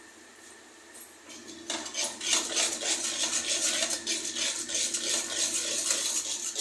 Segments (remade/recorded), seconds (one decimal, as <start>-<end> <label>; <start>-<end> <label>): 0.0-6.6 recorded